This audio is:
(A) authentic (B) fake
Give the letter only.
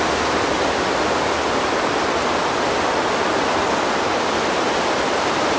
A